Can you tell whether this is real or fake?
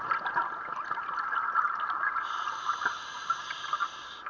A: real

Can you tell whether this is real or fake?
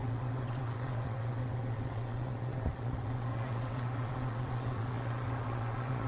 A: fake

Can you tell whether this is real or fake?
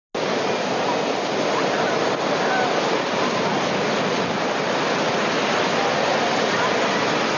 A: real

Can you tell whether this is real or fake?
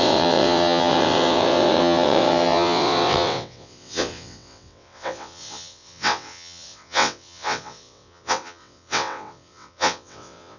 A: fake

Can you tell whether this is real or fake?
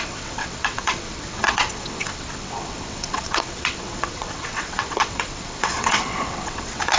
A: fake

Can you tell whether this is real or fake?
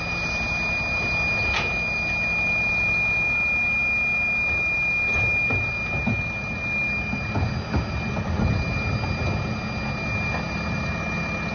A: real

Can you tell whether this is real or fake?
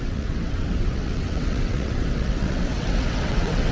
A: fake